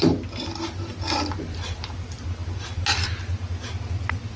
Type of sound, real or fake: real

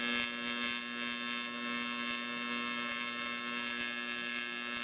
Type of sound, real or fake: real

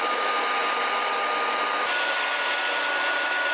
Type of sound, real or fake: real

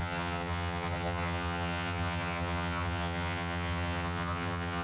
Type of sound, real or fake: fake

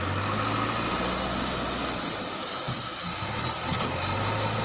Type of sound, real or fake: real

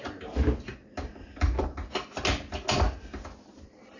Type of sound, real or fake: real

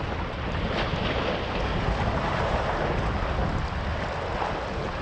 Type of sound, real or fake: real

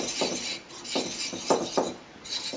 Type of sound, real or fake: real